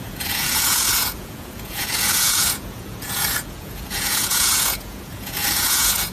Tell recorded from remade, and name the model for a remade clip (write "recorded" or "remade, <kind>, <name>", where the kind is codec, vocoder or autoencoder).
remade, vocoder, Vocos